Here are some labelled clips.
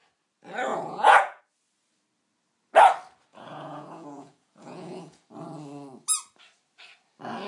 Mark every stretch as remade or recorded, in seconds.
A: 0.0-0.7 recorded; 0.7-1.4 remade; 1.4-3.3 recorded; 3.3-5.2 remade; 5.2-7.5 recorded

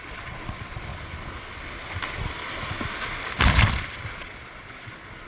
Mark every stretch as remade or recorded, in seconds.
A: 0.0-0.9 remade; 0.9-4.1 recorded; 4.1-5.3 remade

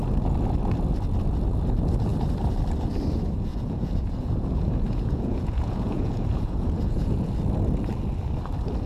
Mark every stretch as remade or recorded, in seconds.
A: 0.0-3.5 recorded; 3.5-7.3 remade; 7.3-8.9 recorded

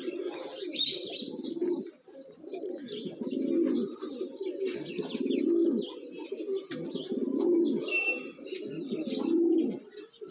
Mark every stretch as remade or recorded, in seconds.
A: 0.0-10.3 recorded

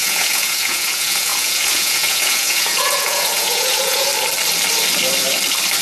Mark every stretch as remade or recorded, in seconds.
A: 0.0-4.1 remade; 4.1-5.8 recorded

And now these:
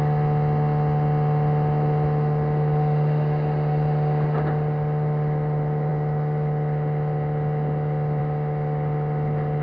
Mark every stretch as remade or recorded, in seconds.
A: 0.0-9.6 recorded